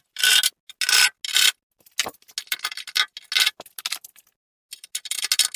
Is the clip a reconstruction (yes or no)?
no